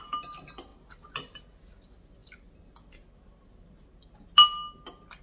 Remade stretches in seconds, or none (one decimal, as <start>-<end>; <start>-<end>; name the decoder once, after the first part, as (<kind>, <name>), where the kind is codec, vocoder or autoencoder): none